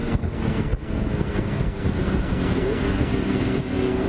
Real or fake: fake